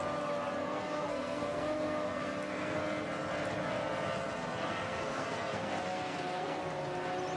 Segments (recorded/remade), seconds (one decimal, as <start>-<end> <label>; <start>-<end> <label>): 0.0-0.6 recorded; 0.6-2.8 remade; 2.8-4.6 recorded; 4.6-6.6 remade; 6.6-7.4 recorded